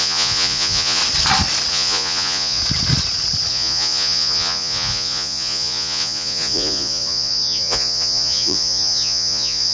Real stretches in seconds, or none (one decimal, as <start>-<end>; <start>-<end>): 1.0-1.7; 2.6-3.5